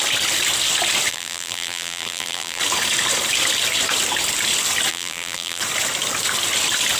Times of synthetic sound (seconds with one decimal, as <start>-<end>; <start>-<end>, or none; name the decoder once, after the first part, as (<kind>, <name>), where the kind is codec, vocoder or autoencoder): 1.1-2.6 (vocoder, BigVGAN v2); 4.9-5.6